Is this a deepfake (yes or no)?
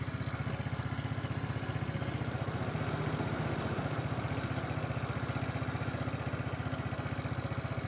no